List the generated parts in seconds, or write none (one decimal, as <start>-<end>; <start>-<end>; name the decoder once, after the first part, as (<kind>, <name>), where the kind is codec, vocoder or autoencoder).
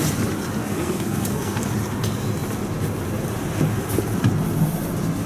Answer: 0.6-1.7 (codec, SNAC)